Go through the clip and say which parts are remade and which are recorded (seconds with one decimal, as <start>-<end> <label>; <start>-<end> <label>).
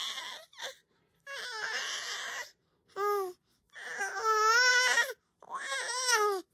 0.0-6.5 recorded